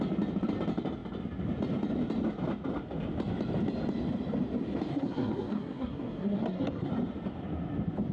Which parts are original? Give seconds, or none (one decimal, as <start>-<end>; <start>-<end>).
0.0-4.9; 6.9-8.1